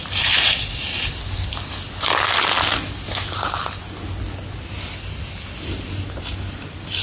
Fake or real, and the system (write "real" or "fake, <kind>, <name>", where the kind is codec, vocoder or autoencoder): real